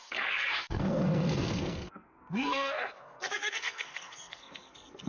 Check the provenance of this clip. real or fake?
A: fake